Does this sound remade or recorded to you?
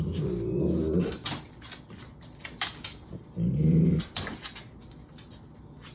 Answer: recorded